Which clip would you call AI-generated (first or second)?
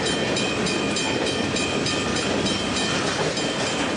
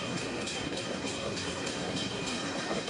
second